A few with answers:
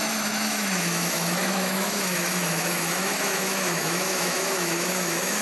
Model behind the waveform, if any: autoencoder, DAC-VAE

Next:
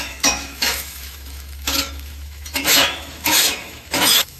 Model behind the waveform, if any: autoencoder, DAC-VAE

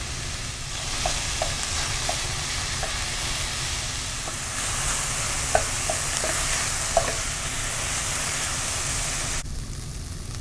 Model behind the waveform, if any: none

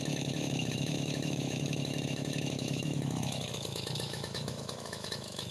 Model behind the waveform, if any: autoencoder, DAC-VAE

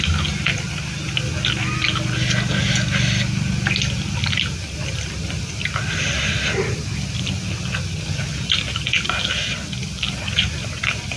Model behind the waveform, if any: none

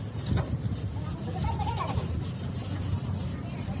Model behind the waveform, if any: none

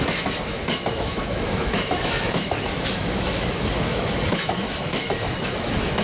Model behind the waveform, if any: autoencoder, DAC-VAE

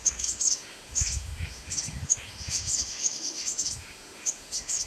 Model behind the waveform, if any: autoencoder, DAC-VAE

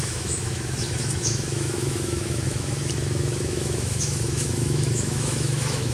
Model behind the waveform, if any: autoencoder, DAC-VAE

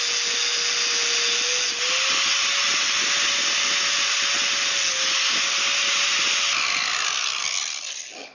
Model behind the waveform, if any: none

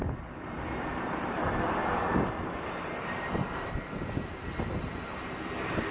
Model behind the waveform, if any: none